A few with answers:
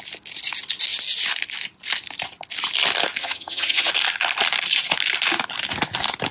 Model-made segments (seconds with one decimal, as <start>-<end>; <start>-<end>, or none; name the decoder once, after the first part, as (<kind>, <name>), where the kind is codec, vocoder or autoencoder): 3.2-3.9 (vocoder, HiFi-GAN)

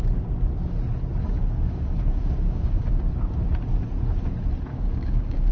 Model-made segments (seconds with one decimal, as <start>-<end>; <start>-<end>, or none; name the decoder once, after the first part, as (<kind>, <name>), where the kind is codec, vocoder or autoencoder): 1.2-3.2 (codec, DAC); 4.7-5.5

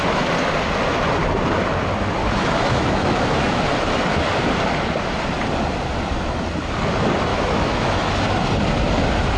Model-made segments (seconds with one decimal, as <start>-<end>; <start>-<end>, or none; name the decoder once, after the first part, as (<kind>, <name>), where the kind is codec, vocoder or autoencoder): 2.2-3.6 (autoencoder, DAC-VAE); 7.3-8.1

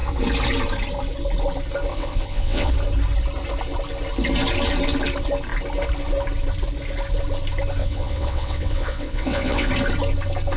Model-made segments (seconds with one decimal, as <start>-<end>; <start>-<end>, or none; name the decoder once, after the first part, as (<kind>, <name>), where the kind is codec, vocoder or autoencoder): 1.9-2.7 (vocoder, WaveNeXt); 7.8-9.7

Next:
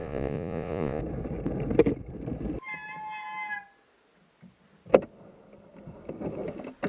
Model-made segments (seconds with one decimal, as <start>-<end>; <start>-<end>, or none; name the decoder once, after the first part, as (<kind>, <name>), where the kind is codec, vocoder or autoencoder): 0.0-1.0 (vocoder, Vocos)